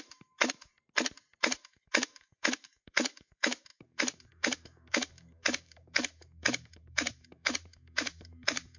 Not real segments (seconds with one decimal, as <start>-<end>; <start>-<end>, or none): 0.0-0.7; 1.4-8.8

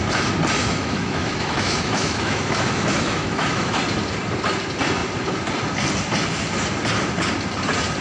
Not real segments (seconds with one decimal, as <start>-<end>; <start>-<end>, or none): 0.6-3.8